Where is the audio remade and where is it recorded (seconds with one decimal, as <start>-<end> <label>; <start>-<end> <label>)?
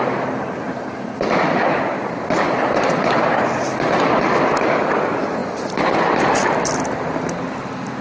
0.0-8.0 recorded